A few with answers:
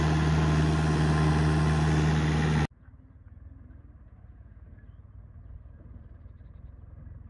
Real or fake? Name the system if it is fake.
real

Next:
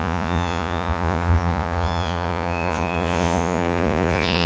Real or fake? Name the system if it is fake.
fake, vocoder, Vocos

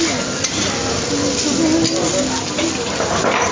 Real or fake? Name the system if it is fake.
real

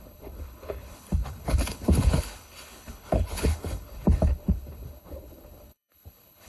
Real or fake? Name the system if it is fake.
fake, codec, HILCodec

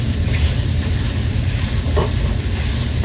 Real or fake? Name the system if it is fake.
fake, vocoder, BigVGAN v2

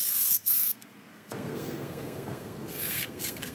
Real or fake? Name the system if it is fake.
fake, codec, SNAC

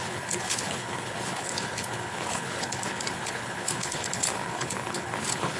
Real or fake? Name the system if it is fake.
fake, codec, HILCodec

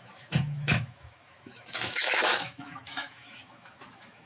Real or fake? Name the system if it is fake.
fake, autoencoder, DAC-VAE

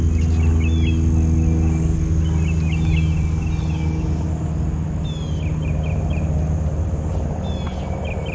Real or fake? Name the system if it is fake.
real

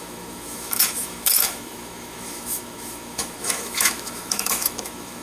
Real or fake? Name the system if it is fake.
fake, autoencoder, DAC-VAE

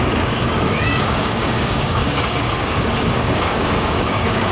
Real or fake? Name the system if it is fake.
fake, codec, DAC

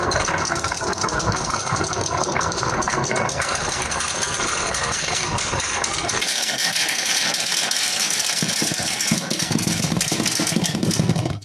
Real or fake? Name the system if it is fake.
fake, codec, SNAC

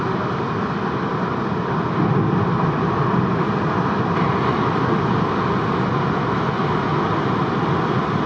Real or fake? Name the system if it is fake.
real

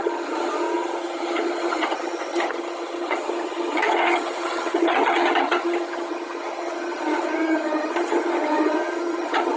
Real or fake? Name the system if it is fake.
fake, vocoder, HiFi-GAN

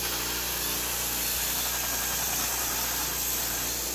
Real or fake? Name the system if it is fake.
real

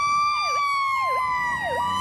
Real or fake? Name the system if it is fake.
real